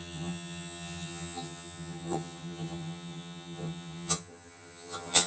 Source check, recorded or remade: remade